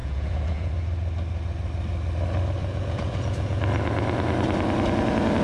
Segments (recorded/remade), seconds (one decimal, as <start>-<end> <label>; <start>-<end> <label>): 0.0-0.7 remade; 0.7-2.6 recorded; 2.6-3.6 remade; 3.6-5.4 recorded